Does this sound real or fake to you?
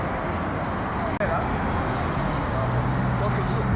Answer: real